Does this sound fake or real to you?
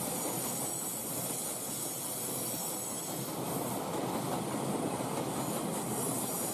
real